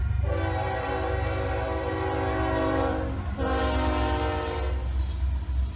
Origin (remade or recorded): recorded